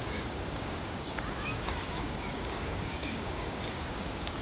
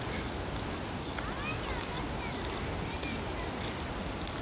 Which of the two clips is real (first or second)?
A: second